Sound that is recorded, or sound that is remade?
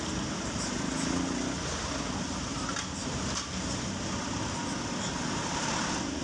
recorded